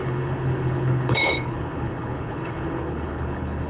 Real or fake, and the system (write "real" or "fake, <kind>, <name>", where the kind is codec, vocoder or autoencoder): fake, codec, HILCodec